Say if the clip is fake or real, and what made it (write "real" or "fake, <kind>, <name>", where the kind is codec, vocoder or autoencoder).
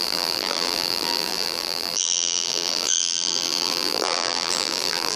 fake, vocoder, BigVGAN v2